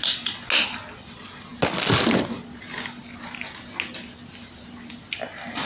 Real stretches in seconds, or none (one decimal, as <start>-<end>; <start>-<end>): 0.0-5.7